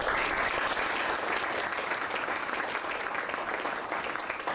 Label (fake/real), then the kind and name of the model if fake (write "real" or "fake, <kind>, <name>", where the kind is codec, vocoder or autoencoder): real